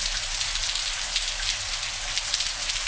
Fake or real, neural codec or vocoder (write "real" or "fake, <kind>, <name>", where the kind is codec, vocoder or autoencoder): fake, vocoder, BigVGAN v2